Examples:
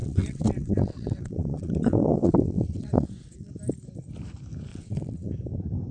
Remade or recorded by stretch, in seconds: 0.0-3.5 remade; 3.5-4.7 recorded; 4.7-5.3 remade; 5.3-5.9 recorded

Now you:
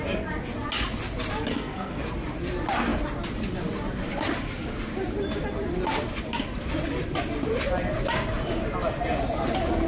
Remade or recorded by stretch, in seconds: 0.0-1.5 recorded; 1.5-2.0 remade; 2.0-9.9 recorded

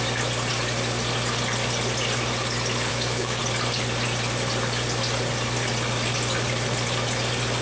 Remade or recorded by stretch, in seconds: 0.0-2.9 recorded; 2.9-3.4 remade; 3.4-7.6 recorded

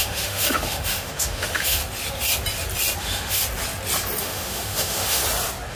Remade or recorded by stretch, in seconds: 0.0-1.8 remade; 1.8-3.0 recorded; 3.0-3.4 remade; 3.4-4.2 recorded; 4.2-5.2 remade; 5.2-5.7 recorded

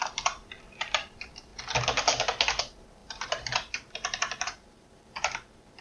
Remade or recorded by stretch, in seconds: 0.0-1.5 remade; 1.5-2.6 recorded; 2.6-5.8 remade

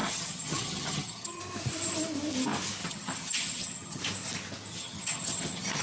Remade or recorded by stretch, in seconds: 0.0-1.4 remade; 1.4-2.8 recorded; 2.8-4.0 remade; 4.0-4.7 recorded; 4.7-5.8 remade

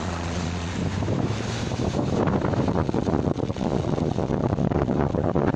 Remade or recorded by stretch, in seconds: 0.0-0.7 remade; 0.7-2.7 recorded; 2.7-5.6 remade